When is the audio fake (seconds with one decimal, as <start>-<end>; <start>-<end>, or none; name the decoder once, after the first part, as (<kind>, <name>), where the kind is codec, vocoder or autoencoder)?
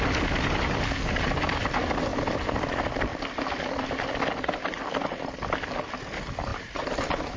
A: 6.5-7.4 (vocoder, BigVGAN v2)